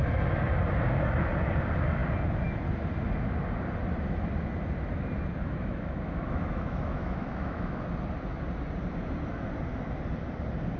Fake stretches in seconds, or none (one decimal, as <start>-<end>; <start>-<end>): 5.4-7.8